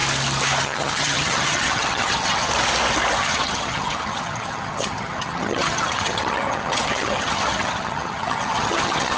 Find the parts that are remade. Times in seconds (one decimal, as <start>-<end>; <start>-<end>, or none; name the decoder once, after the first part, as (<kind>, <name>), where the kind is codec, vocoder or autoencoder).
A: 0.6-2.5 (vocoder, HiFi-GAN); 3.2-9.2